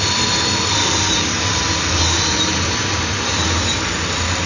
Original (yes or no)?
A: yes